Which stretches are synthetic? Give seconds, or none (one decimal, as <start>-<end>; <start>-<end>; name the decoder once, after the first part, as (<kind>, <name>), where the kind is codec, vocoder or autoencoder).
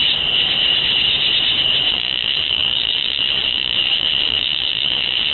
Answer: 1.9-5.3 (vocoder, Vocos)